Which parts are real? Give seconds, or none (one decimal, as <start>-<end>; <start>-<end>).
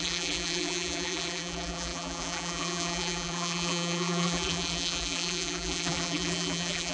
none